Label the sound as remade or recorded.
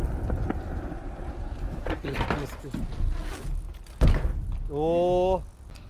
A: recorded